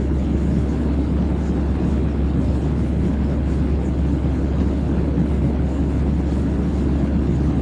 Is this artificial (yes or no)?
yes